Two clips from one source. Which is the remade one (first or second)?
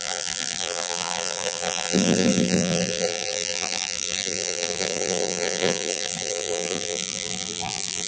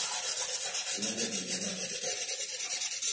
first